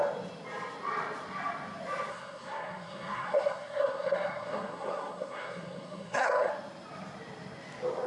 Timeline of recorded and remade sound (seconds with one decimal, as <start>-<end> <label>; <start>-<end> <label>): 0.0-2.1 recorded; 2.1-6.5 remade; 6.5-8.1 recorded